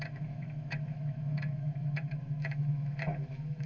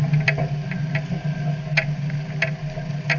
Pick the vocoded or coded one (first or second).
first